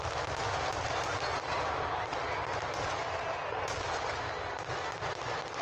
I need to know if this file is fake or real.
real